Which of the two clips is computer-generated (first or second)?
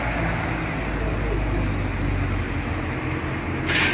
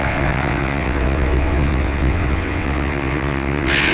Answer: second